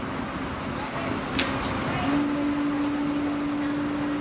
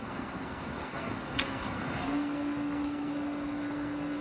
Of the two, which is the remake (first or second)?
second